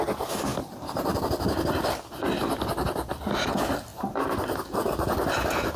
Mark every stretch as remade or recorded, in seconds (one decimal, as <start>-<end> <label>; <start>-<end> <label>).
0.0-5.8 recorded